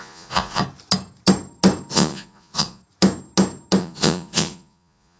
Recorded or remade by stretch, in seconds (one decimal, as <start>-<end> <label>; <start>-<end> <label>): 0.0-0.6 remade; 0.6-1.9 recorded; 1.9-2.8 remade; 2.8-3.8 recorded; 3.8-5.2 remade